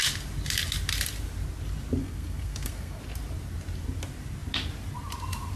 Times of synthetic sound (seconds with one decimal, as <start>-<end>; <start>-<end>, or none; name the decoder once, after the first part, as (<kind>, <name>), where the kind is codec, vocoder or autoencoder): 2.0-3.0 (codec, SNAC)